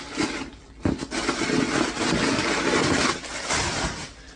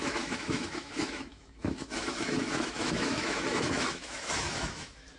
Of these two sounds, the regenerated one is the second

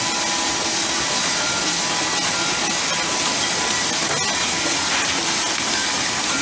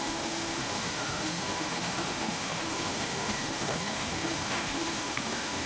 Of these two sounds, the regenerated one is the second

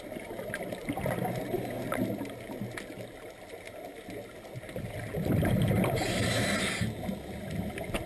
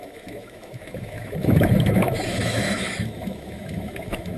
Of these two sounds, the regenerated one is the second